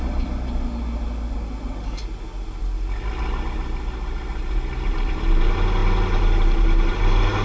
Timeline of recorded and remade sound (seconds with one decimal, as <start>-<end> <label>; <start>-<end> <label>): 0.0-7.4 recorded